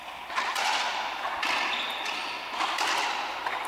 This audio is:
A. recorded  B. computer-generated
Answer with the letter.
A